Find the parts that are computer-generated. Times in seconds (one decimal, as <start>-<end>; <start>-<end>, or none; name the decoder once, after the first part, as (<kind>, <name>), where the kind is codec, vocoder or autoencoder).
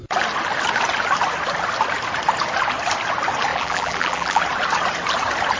3.5-4.4 (vocoder, BigVGAN v2)